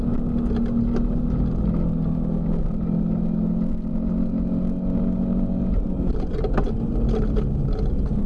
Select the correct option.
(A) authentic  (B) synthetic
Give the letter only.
A